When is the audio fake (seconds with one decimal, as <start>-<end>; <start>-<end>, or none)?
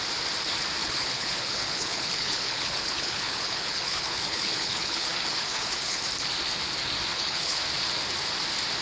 0.8-6.0; 7.1-7.6